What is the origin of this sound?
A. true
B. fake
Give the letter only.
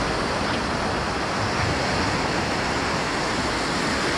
A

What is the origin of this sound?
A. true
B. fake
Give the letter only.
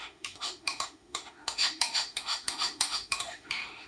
B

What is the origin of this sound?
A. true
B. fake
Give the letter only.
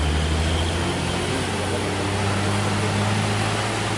A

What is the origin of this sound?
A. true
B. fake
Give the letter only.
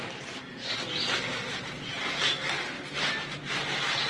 A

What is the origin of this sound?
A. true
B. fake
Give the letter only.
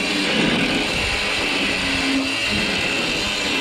A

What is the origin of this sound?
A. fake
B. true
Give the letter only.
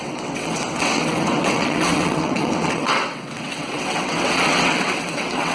A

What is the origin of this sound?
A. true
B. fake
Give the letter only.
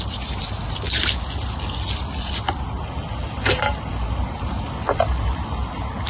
A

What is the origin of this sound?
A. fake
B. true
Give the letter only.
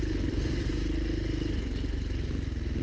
B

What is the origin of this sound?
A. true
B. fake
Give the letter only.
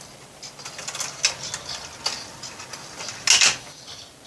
A